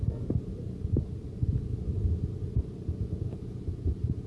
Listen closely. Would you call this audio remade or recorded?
recorded